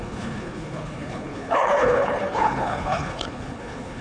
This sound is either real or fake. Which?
fake